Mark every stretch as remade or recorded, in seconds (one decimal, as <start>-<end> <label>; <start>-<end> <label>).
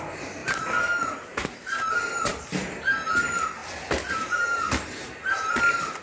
0.0-6.0 recorded